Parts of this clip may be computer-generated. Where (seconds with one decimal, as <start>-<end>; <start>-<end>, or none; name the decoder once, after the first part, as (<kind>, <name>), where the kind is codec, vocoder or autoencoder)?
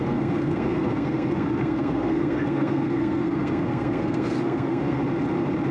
0.0-5.0 (codec, SNAC)